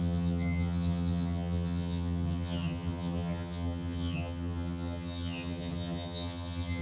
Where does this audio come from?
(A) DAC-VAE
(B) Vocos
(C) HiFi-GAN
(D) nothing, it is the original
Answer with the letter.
C